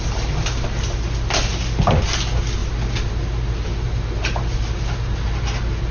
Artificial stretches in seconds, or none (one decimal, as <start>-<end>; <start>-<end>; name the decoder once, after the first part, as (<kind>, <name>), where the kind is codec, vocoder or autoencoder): none